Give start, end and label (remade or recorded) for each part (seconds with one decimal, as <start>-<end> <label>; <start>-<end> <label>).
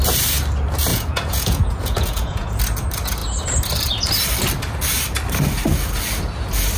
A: 0.0-0.9 recorded; 0.9-2.6 remade; 2.6-6.8 recorded